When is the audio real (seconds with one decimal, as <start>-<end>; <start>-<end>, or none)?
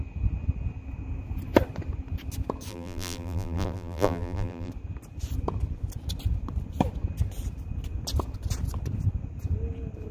0.0-2.7; 4.7-10.1